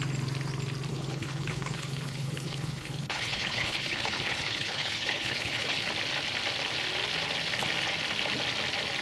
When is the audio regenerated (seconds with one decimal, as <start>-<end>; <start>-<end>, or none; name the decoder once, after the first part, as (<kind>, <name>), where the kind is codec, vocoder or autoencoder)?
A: 0.9-5.9 (codec, HILCodec)